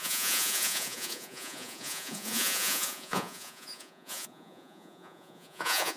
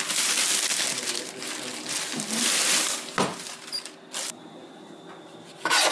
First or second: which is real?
second